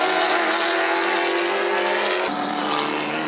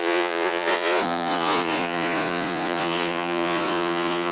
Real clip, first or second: first